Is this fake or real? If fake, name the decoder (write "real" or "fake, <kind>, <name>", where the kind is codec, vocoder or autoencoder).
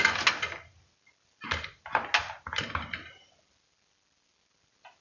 real